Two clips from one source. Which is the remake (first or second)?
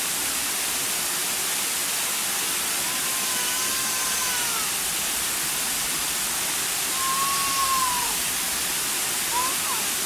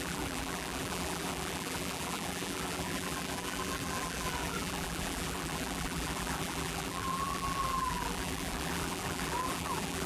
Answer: second